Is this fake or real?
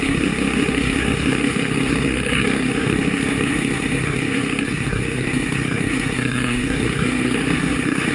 fake